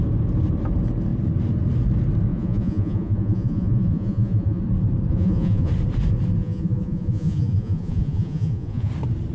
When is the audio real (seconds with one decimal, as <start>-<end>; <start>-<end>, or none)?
0.0-2.3; 4.6-5.1; 5.7-6.4; 8.9-9.3

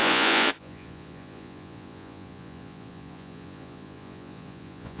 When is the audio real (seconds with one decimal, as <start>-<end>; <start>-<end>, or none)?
none

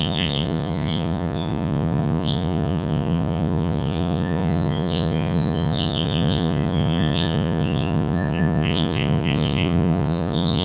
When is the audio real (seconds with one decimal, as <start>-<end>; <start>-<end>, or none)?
none

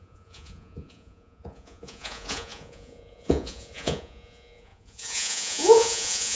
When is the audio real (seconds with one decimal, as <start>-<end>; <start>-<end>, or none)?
none

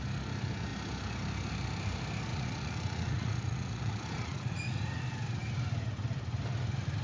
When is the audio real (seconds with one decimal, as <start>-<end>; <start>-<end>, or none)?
0.0-2.3; 5.0-7.0

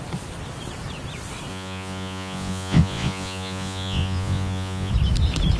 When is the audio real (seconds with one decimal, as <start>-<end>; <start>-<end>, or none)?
0.0-1.5; 4.9-5.6

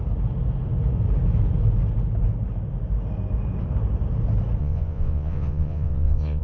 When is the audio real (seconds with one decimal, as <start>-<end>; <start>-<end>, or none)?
0.0-4.6